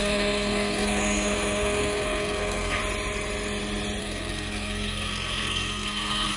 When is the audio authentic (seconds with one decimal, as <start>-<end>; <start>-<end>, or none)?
2.8-4.0